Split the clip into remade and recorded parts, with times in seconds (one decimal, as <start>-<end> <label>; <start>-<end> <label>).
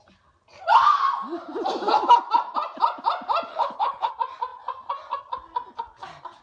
0.0-3.5 recorded; 3.5-4.1 remade; 4.1-6.4 recorded